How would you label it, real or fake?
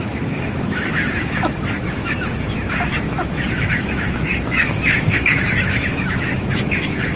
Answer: fake